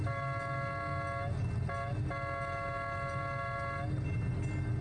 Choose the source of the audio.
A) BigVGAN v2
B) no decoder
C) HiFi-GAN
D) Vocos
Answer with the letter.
B